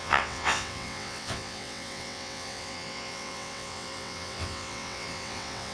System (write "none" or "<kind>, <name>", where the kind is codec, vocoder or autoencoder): vocoder, WaveNeXt